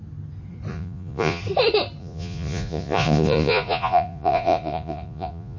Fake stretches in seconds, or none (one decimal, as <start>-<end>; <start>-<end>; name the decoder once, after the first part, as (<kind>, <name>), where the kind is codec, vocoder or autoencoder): 0.7-1.4 (vocoder, Vocos); 2.0-5.6